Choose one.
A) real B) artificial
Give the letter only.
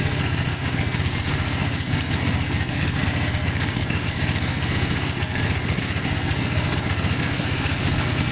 B